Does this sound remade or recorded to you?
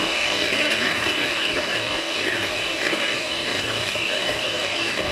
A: remade